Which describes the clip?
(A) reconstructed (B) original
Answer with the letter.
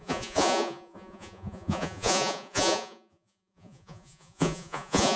A